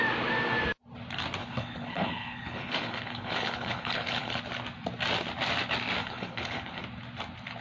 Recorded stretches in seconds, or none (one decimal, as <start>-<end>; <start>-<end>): 0.0-1.4; 4.4-6.0; 6.8-7.6

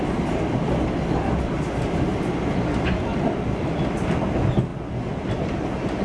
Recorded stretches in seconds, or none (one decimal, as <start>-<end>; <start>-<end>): 0.0-6.0

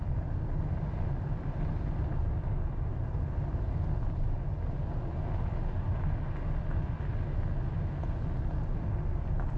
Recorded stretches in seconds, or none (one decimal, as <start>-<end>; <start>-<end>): 0.0-9.6